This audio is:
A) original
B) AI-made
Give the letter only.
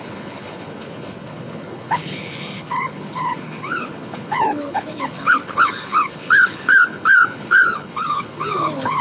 B